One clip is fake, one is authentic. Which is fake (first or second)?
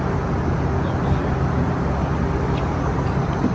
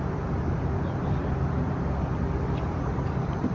second